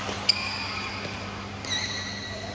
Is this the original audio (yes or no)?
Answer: yes